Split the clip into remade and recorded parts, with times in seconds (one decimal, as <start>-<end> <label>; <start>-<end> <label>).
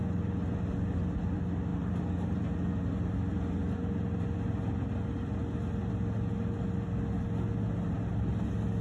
0.0-8.8 recorded